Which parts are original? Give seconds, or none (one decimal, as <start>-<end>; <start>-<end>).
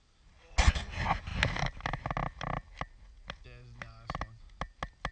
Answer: 0.0-5.1